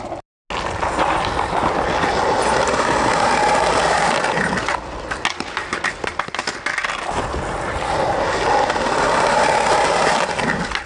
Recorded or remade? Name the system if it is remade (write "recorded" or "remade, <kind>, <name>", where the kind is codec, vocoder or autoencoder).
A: recorded